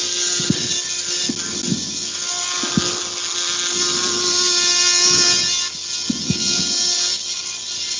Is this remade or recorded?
recorded